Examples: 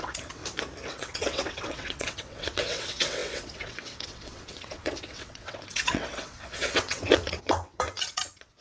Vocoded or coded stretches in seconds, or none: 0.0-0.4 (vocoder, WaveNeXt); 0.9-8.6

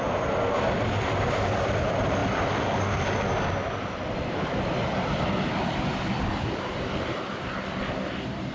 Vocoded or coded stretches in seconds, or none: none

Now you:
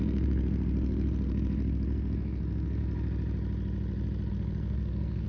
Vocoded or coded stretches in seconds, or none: 0.0-2.8 (codec, SNAC); 4.3-5.3